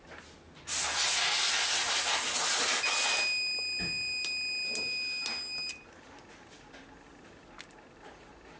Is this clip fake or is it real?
real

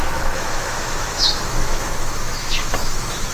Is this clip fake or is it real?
fake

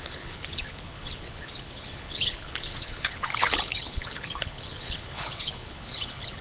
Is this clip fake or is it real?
fake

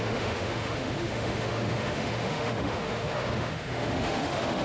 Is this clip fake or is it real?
fake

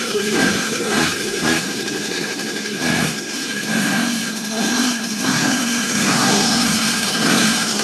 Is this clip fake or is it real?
fake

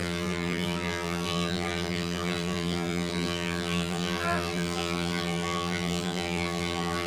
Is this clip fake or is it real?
fake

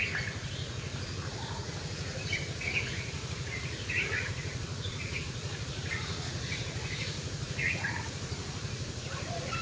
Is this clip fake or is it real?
fake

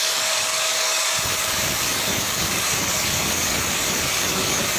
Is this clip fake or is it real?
fake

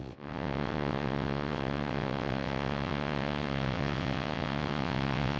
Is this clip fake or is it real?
fake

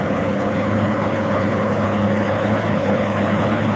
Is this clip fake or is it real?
fake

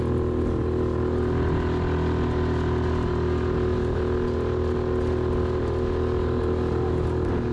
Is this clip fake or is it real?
real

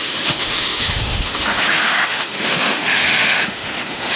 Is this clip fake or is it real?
fake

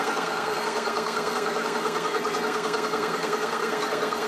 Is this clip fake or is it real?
fake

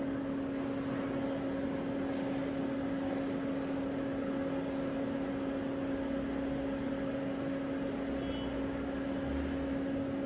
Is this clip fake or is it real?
real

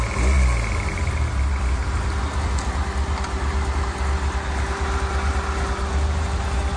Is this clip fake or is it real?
real